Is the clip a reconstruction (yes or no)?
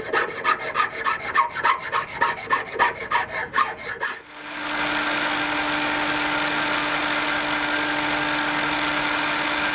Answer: no